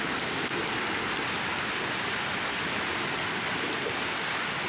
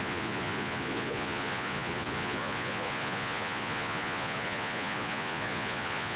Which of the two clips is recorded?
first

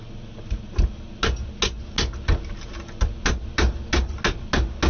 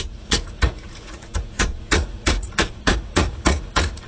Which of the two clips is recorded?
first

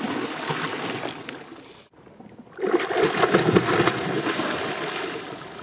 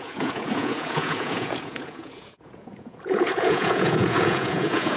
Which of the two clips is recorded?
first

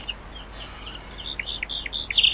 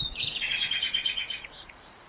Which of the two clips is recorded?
first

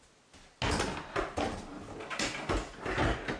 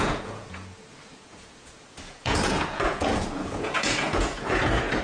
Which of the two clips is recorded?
first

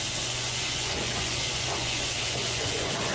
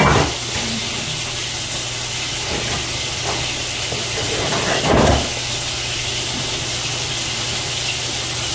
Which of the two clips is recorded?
second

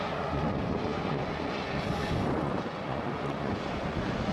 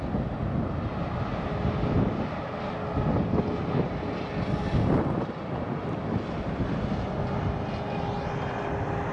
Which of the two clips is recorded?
second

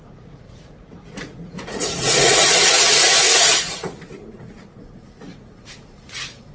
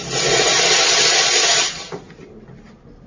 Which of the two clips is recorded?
second